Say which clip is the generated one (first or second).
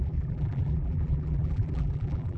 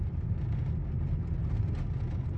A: first